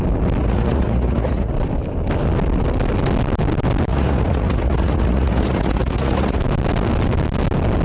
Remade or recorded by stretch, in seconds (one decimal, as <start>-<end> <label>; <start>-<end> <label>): 0.0-0.4 recorded; 0.4-1.5 remade; 1.5-3.9 recorded; 3.9-6.4 remade; 6.4-7.8 recorded